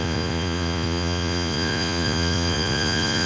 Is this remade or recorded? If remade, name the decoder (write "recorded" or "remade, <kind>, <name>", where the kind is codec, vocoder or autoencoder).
remade, vocoder, Vocos